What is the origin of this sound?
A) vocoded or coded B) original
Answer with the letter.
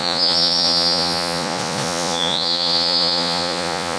A